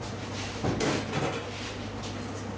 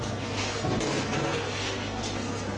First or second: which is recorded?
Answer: first